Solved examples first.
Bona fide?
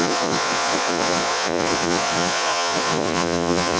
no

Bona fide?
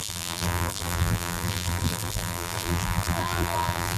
no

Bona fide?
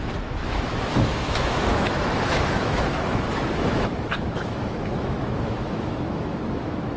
no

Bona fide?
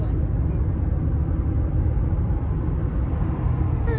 yes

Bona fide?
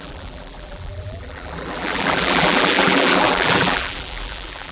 no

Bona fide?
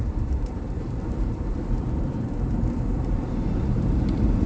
no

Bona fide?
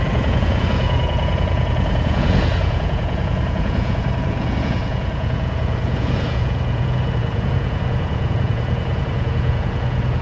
no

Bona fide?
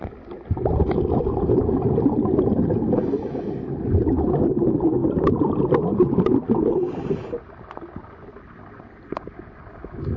yes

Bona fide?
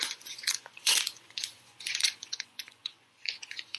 no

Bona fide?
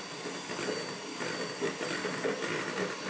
yes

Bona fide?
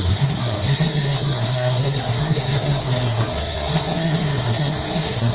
no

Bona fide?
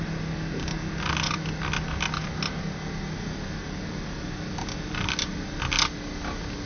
yes